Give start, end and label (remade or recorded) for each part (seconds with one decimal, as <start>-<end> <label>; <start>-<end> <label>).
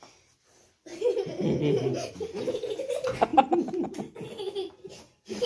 0.0-5.5 recorded